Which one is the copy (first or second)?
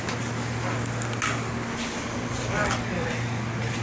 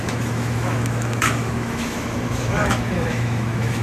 second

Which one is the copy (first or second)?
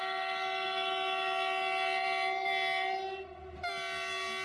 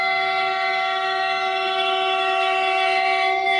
second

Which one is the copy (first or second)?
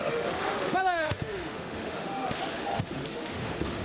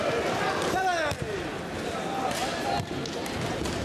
first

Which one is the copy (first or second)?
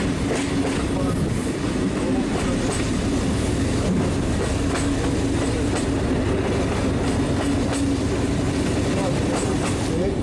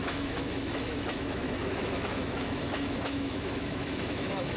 second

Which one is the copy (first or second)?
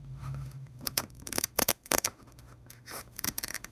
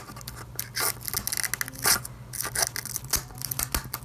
first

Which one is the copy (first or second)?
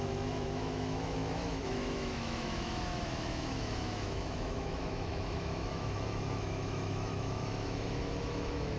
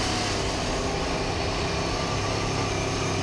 first